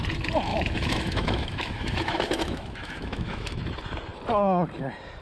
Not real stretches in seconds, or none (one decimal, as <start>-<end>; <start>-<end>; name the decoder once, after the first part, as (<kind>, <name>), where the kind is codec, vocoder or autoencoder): 0.5-3.6 (autoencoder, DAC-VAE)